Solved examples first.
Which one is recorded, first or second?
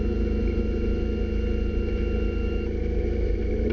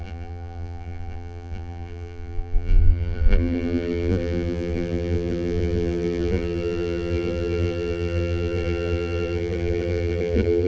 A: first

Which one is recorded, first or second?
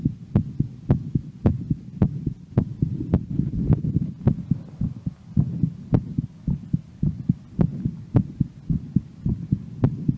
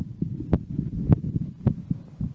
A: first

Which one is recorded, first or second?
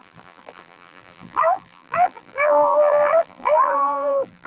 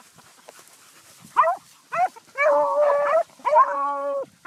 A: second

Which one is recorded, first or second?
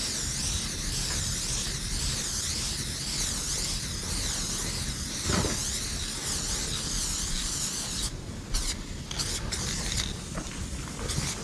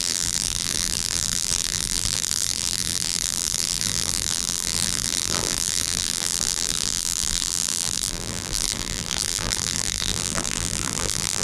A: first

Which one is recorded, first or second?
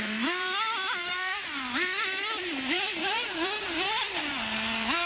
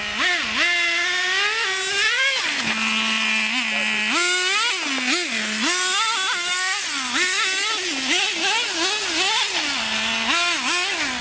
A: second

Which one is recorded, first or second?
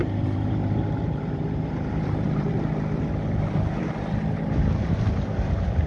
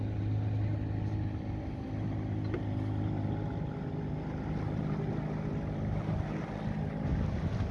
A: second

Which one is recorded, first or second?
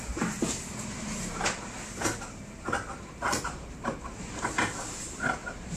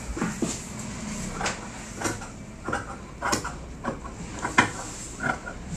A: second